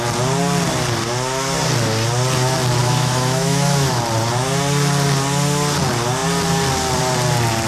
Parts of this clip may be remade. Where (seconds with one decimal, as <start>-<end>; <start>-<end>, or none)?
2.8-4.0